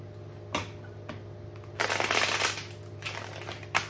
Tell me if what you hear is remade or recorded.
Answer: recorded